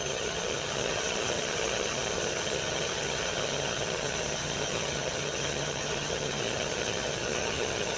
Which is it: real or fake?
fake